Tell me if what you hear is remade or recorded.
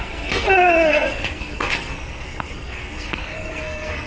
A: remade